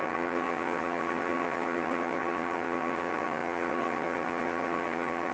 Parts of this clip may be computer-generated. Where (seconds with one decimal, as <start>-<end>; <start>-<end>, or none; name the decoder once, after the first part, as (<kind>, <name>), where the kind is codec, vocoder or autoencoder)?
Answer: 0.0-5.3 (vocoder, HiFi-GAN)